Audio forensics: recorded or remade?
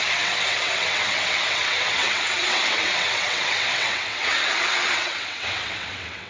remade